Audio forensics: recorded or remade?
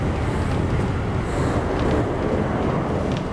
recorded